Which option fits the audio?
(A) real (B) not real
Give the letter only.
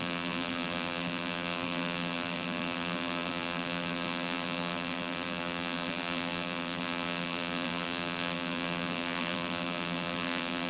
B